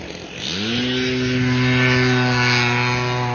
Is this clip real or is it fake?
real